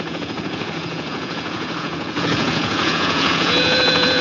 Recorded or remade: remade